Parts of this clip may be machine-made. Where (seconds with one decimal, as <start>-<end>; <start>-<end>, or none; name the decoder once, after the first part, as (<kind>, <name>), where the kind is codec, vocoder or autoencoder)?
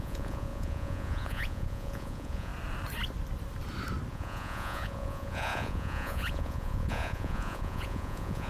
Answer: 0.0-2.5 (vocoder, Vocos); 4.1-8.5